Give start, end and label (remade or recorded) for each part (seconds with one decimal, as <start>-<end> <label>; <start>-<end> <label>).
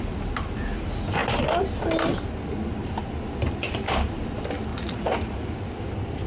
0.0-4.7 recorded; 4.7-5.5 remade; 5.5-6.3 recorded